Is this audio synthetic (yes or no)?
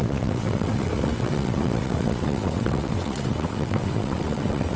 yes